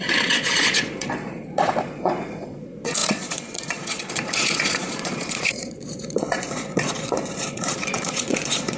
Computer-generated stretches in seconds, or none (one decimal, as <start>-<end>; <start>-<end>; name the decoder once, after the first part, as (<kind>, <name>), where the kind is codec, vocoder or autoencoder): 0.0-8.8 (vocoder, Vocos)